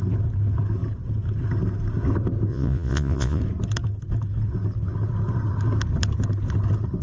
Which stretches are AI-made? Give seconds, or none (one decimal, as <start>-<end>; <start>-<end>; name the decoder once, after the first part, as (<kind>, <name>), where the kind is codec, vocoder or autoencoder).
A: 2.5-3.4 (vocoder, Vocos)